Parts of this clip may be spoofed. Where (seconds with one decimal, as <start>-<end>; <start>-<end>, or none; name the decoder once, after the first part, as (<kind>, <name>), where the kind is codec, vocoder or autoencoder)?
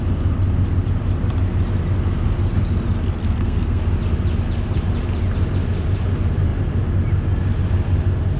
3.2-3.8 (codec, SNAC)